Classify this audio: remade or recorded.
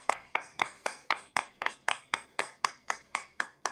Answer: remade